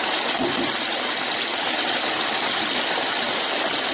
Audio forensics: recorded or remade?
recorded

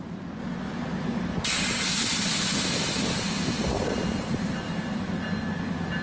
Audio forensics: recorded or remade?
recorded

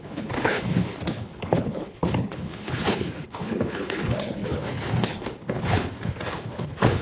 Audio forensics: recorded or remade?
remade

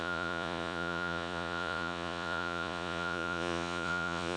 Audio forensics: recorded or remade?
remade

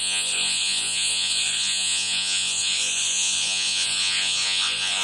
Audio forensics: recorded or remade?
remade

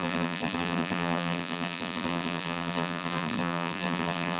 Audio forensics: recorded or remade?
remade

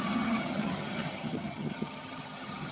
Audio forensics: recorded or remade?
remade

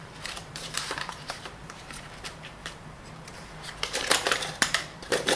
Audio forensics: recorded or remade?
remade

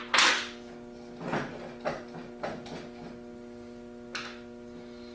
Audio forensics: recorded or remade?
recorded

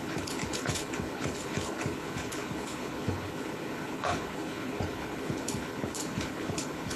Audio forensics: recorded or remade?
remade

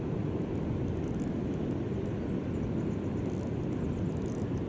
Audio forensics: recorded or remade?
recorded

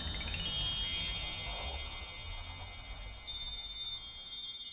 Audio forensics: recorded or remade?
recorded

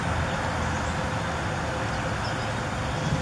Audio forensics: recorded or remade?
remade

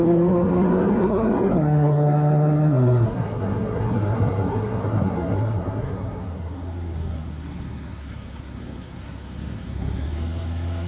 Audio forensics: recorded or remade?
remade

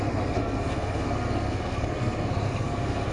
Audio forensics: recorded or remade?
remade